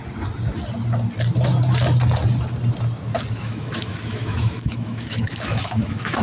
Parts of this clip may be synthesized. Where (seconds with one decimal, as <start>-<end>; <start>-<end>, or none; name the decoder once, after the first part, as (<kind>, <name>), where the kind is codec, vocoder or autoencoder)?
3.3-6.2 (autoencoder, DAC-VAE)